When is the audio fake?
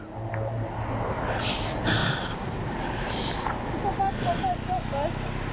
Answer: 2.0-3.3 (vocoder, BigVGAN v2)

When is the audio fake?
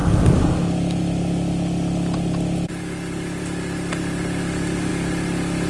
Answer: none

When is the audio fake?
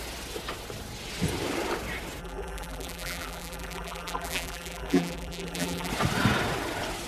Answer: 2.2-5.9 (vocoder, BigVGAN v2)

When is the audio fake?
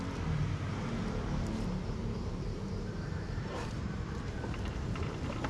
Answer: 2.0-5.5 (vocoder, BigVGAN v2)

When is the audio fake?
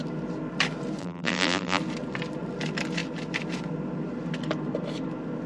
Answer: 1.0-1.8 (vocoder, BigVGAN v2)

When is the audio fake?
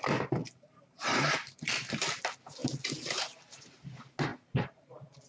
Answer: 0.4-1.7 (vocoder, BigVGAN v2); 4.3-5.3